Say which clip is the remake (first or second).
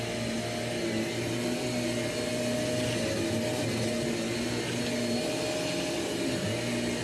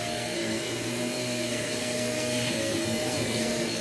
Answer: second